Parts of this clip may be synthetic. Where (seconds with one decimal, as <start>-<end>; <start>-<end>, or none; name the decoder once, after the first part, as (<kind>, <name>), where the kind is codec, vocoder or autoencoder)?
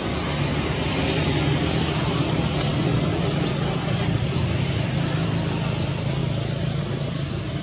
none